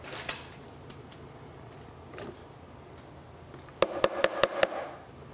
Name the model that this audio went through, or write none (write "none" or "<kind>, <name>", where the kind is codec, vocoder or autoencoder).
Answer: none